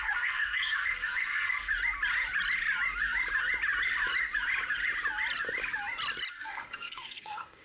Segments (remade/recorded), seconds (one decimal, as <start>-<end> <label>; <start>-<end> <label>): 0.0-1.7 remade; 1.7-6.3 recorded; 6.3-7.6 remade